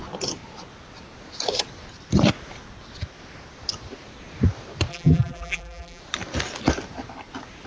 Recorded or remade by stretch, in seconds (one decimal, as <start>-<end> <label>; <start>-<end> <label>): 0.0-4.9 recorded; 4.9-6.0 remade; 6.0-7.7 recorded